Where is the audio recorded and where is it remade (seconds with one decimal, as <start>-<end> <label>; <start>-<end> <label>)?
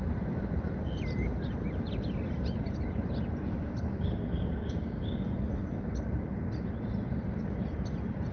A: 0.0-3.9 recorded; 3.9-5.3 remade; 5.3-8.3 recorded